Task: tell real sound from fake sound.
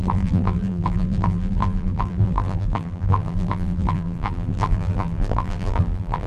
fake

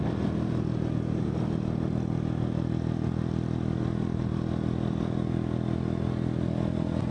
real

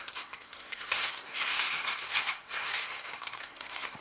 fake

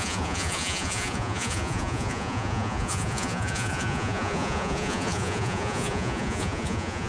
fake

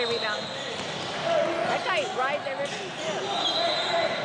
real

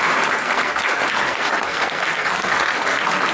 fake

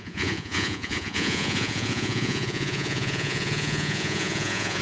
fake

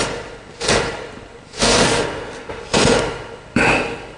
fake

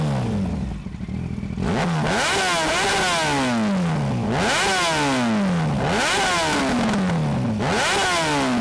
real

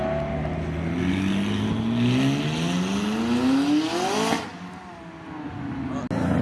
real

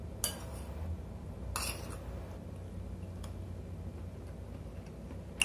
real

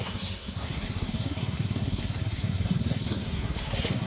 fake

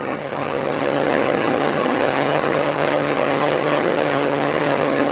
fake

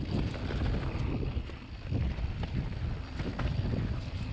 real